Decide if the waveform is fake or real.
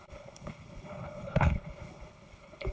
fake